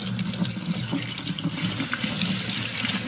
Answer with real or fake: real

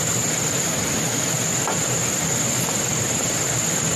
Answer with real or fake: fake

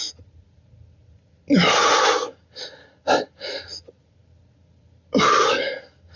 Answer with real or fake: real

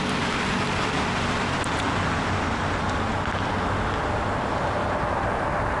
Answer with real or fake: real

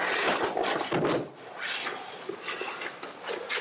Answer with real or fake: real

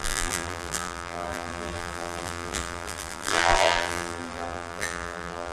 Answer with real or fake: fake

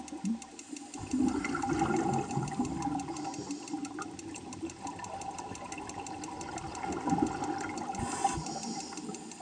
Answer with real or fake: real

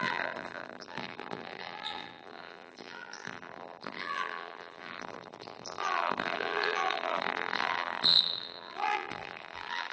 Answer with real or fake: fake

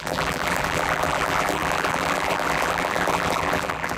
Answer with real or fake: fake